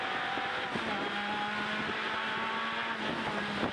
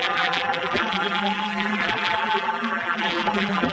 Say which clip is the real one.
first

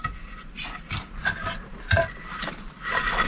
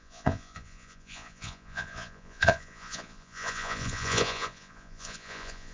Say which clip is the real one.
first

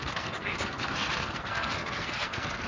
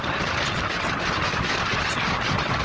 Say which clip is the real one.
second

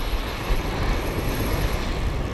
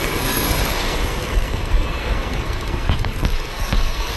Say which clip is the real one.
first